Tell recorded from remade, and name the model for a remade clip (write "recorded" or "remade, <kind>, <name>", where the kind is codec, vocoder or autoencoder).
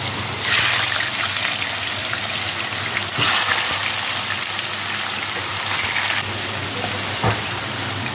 recorded